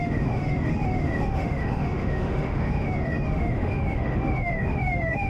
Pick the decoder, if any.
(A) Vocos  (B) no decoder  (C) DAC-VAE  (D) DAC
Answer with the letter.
C